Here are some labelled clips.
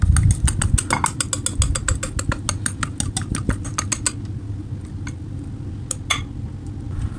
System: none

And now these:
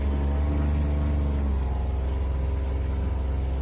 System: none